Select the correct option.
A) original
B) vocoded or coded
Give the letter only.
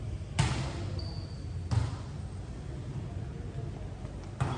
A